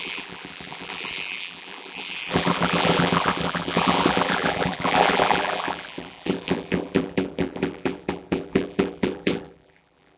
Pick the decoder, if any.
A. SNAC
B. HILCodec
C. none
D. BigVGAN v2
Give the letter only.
D